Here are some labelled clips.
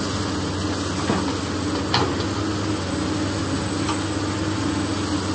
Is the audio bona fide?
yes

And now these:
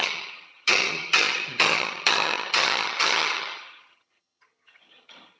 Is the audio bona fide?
no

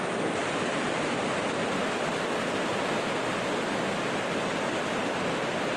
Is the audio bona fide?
yes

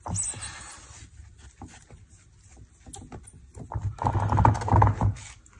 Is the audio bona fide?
yes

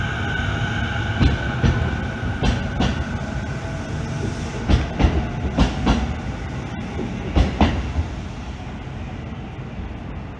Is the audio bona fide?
yes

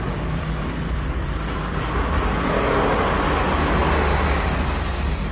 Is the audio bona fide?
yes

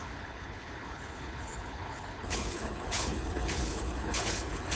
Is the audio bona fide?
no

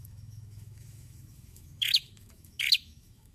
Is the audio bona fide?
no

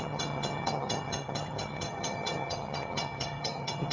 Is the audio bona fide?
no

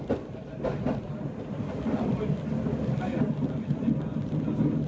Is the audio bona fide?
yes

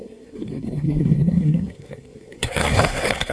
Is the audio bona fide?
no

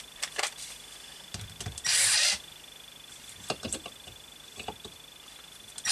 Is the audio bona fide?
no